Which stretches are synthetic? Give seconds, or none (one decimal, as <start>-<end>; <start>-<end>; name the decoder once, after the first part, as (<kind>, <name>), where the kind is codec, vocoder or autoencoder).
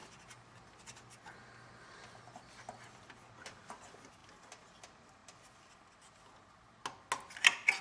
none